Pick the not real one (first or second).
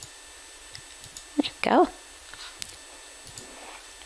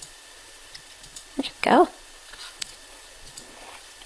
second